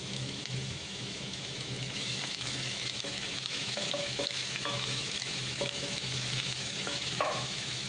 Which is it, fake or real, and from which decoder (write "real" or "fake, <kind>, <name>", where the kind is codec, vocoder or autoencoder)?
fake, autoencoder, DAC-VAE